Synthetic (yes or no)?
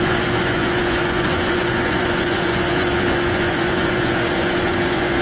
yes